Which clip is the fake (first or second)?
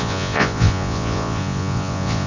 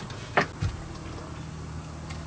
first